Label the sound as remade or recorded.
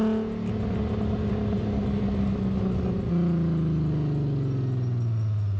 recorded